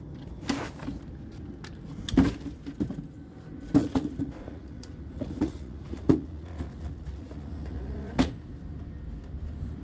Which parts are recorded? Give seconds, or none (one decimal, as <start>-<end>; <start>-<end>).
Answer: 0.0-3.8; 8.3-9.8